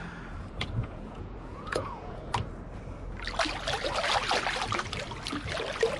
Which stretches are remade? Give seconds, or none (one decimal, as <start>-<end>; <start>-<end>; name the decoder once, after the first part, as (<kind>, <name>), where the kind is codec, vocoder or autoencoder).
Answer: 0.8-2.3 (vocoder, Vocos)